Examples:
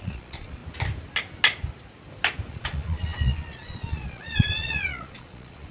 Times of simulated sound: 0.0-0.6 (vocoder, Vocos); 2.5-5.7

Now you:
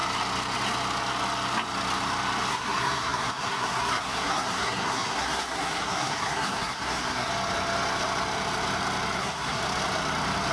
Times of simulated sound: 2.5-7.3 (codec, SNAC); 9.2-9.6